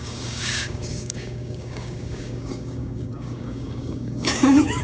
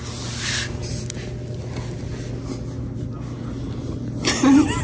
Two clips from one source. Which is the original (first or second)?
second